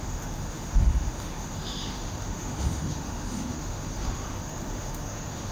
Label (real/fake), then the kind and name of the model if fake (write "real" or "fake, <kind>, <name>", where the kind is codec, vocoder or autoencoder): fake, autoencoder, DAC-VAE